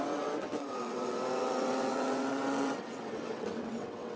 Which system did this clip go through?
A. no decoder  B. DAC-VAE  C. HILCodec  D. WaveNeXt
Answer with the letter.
D